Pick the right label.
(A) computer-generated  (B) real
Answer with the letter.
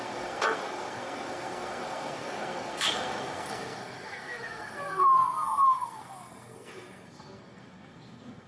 A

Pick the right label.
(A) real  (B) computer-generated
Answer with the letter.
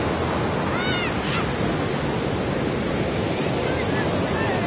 A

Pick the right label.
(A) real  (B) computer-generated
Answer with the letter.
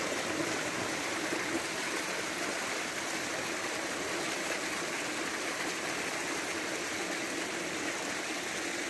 A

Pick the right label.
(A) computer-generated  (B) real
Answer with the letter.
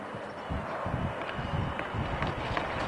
B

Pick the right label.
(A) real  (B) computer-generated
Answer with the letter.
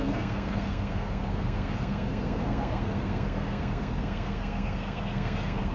B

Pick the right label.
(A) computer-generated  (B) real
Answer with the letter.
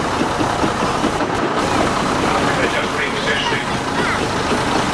B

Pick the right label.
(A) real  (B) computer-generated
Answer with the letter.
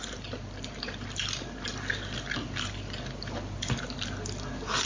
B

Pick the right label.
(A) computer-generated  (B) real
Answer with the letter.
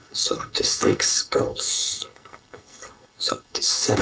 A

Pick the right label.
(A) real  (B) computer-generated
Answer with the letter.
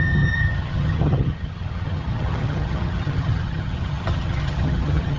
B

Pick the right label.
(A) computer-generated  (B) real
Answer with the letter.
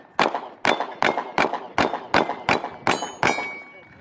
B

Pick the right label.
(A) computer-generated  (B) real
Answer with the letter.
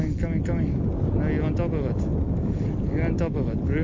B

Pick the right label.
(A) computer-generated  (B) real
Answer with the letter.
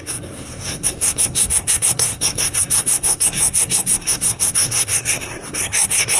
A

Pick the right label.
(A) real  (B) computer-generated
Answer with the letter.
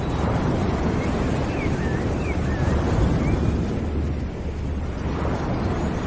A